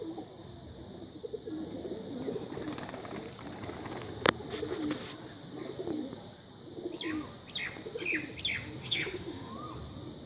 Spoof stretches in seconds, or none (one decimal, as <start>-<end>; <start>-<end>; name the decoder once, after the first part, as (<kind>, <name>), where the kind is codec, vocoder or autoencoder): 8.8-9.5 (autoencoder, DAC-VAE)